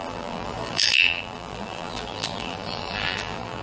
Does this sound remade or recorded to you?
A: remade